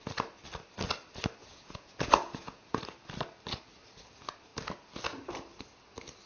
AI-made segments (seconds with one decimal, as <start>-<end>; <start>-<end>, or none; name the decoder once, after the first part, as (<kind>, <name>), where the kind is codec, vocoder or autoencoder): 1.4-2.8 (vocoder, Vocos)

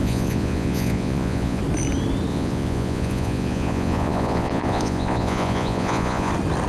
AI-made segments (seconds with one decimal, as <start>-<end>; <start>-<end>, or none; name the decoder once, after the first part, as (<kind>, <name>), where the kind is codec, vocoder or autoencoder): 0.0-1.6 (vocoder, Vocos); 2.3-6.3

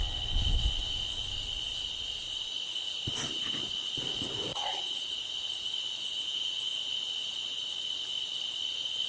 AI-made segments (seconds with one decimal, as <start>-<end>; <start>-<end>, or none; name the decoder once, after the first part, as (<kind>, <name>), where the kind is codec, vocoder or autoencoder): 4.5-5.7 (vocoder, Vocos)

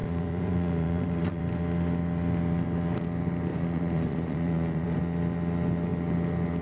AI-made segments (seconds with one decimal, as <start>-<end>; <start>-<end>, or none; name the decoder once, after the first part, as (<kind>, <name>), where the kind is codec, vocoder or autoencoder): 0.0-1.4 (vocoder, Vocos); 3.5-5.0

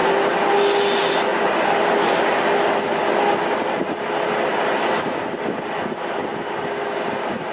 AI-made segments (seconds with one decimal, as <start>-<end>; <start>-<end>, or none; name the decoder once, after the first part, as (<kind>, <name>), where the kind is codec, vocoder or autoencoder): none

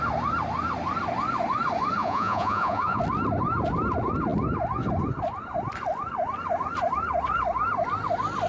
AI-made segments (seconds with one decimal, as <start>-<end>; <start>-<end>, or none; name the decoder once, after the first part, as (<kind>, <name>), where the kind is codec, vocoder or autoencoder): 2.0-3.0 (vocoder, Vocos)